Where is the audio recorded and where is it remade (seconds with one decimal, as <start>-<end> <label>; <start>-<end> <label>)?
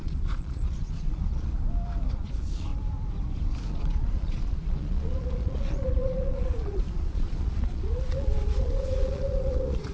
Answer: 0.0-1.5 remade; 1.5-2.1 recorded; 2.1-2.7 remade; 2.7-3.7 recorded; 3.7-9.9 remade